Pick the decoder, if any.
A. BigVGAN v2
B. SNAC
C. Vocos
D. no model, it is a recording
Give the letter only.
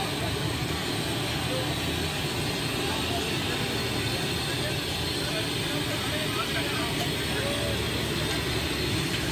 D